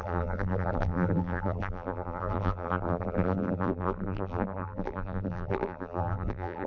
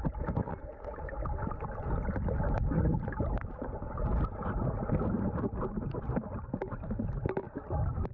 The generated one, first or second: first